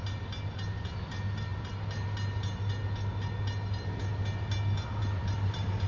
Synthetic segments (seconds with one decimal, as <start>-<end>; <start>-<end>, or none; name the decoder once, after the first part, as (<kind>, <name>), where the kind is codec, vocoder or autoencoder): none